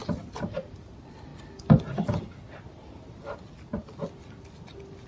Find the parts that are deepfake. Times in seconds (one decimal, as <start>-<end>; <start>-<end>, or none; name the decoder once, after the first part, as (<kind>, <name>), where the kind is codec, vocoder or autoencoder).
none